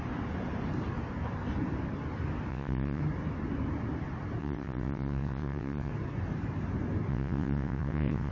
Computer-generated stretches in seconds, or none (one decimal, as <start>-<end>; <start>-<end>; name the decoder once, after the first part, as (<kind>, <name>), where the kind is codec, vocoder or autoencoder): 2.5-3.0 (vocoder, WaveNeXt); 4.4-5.9; 7.1-8.3